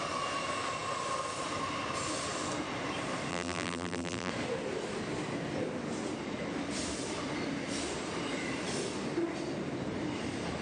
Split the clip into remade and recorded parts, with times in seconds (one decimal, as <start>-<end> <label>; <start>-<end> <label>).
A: 0.0-3.3 recorded; 3.3-4.3 remade; 4.3-10.6 recorded